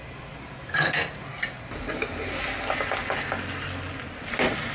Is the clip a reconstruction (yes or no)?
no